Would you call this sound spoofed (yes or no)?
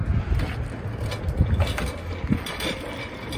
no